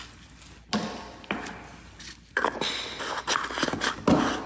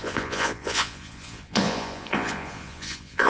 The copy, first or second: second